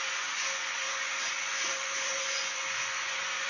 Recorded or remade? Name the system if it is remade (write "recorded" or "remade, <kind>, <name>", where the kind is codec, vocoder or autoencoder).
remade, vocoder, Vocos